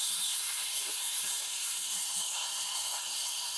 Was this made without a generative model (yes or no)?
no